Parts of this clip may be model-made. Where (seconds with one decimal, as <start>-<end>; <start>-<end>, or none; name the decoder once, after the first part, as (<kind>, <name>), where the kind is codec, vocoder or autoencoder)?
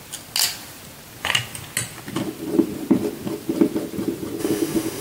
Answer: 4.4-5.0 (autoencoder, DAC-VAE)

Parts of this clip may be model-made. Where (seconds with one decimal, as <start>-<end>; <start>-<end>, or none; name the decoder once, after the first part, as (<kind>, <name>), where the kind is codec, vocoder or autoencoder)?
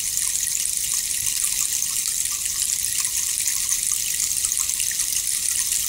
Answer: none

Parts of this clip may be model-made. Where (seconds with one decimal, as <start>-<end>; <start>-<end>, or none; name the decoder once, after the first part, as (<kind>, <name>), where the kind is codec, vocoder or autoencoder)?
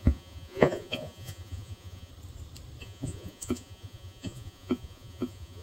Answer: 0.0-2.1 (vocoder, Vocos); 2.8-5.6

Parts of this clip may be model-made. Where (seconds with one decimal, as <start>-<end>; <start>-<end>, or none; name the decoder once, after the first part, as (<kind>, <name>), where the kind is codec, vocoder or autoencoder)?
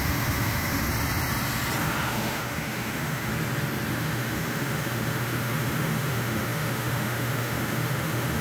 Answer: 0.0-0.9 (autoencoder, DAC-VAE); 1.8-3.3; 3.9-8.4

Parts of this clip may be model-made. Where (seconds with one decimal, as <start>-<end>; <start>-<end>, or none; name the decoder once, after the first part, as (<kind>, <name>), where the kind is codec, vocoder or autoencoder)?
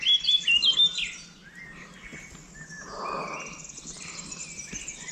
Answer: none